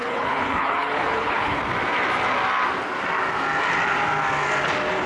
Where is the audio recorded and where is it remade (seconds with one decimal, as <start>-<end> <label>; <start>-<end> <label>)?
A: 0.0-1.6 remade; 1.6-5.1 recorded